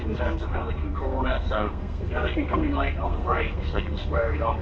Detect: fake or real fake